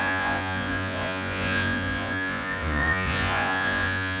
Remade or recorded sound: remade